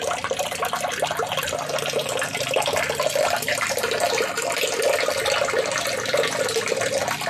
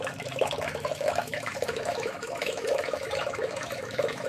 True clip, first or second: first